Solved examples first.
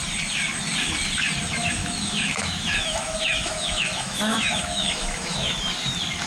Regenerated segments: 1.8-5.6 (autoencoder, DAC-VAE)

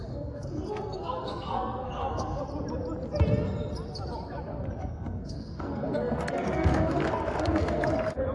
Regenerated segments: 0.0-2.4 (codec, SNAC); 4.8-7.9

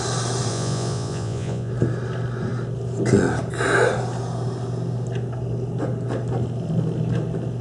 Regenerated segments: 0.5-1.7 (vocoder, Vocos)

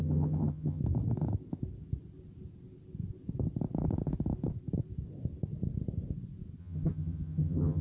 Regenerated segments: 0.0-0.8 (vocoder, HiFi-GAN); 6.6-7.8

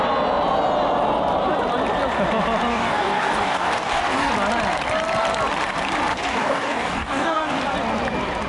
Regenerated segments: 2.7-4.3 (codec, DAC); 6.1-7.6

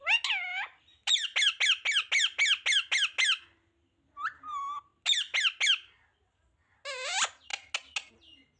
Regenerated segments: none

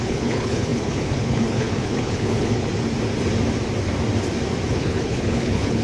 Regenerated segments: 0.0-2.7 (codec, HILCodec); 4.7-5.8

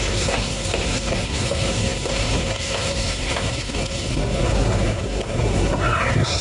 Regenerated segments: 0.0-6.4 (codec, SNAC)